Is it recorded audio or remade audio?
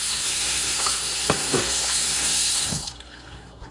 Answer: remade